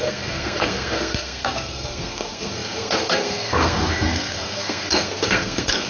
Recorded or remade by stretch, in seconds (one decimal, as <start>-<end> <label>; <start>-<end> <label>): 0.0-5.9 remade